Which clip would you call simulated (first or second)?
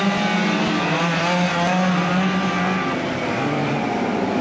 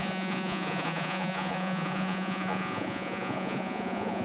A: second